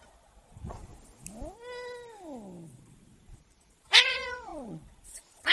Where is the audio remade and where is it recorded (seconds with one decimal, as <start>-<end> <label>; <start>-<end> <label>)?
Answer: 0.0-0.9 remade; 0.9-2.7 recorded; 2.7-5.5 remade